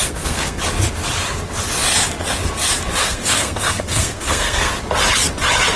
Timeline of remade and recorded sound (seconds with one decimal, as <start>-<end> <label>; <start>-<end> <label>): 0.0-0.6 remade; 0.6-3.0 recorded; 3.0-4.7 remade; 4.7-5.8 recorded